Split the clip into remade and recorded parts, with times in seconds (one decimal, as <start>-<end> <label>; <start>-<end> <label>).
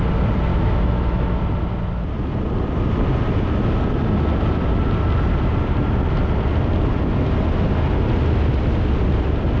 0.0-0.5 recorded; 0.5-1.4 remade; 1.4-9.6 recorded